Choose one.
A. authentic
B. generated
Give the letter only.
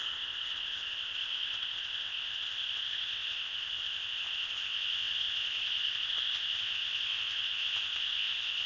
B